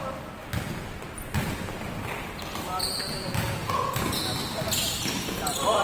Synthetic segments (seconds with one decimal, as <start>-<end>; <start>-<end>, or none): 3.6-4.4